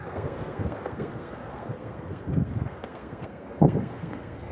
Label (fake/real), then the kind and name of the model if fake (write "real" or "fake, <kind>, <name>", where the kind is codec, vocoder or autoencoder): fake, codec, SNAC